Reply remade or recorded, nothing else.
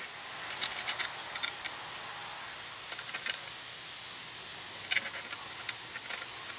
recorded